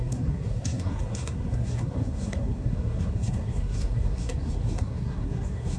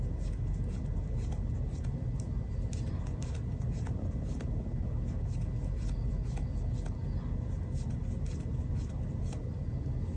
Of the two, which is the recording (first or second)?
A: second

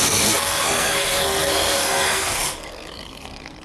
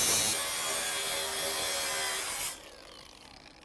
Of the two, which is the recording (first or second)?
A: second